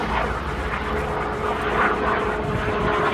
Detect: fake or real real